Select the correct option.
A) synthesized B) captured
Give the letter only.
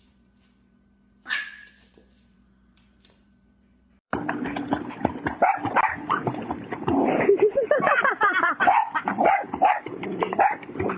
A